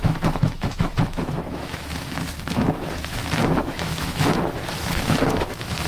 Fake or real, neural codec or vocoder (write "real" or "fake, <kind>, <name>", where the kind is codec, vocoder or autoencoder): fake, autoencoder, DAC-VAE